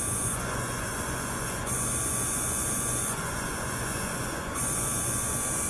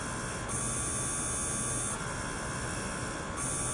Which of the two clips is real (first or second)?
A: second